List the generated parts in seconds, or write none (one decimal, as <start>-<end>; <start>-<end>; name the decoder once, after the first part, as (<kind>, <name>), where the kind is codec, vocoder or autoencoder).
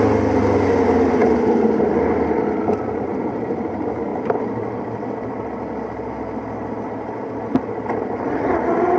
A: none